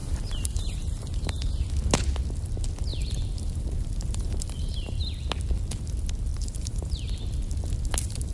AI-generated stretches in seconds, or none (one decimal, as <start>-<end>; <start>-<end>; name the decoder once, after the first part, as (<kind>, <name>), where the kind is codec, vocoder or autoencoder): 0.0-1.5 (vocoder, BigVGAN v2); 2.9-5.0; 6.3-6.9